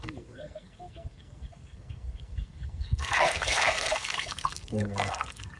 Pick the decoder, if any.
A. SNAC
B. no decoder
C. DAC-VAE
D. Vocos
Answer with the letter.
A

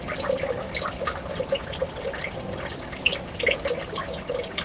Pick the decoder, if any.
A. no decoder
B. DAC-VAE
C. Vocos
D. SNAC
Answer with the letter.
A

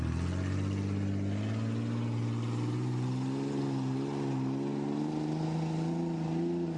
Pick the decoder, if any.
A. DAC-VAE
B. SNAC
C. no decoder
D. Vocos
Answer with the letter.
C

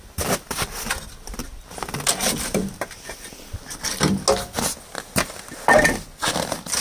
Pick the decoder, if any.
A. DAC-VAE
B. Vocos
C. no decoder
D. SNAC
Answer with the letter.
C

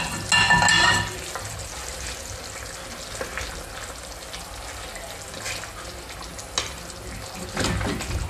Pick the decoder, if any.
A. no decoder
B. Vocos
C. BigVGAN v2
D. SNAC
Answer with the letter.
A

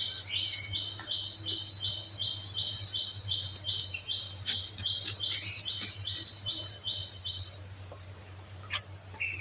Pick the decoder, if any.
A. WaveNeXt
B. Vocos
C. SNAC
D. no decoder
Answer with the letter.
D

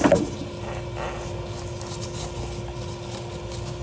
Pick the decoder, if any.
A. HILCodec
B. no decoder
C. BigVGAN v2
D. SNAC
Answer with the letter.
B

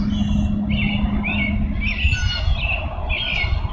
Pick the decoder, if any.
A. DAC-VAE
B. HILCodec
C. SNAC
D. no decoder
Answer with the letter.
D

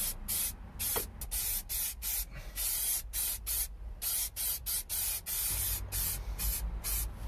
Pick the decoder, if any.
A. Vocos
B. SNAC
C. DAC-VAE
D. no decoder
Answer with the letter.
D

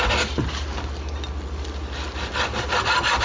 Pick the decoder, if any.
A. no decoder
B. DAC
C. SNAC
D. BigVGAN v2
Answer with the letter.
A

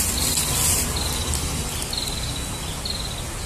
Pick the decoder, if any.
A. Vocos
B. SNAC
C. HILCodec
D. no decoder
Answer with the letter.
D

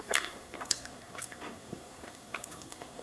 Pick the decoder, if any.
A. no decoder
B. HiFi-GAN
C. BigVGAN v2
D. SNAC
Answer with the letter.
D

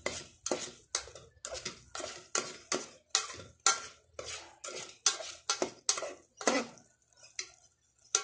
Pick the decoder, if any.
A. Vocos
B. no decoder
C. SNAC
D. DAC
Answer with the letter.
B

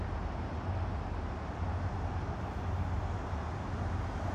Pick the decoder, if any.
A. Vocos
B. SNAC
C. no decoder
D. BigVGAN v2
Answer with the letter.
C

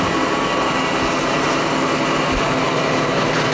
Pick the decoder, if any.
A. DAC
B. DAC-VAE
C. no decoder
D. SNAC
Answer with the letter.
C